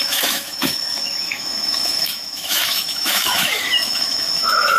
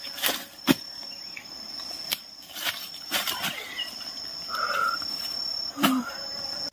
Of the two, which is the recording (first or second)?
second